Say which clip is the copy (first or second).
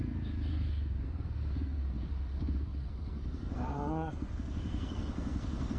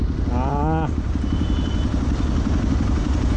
first